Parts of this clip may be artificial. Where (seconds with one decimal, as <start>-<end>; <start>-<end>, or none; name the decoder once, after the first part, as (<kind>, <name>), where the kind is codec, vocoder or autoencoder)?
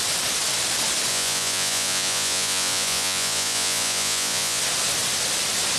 1.1-4.6 (vocoder, Vocos)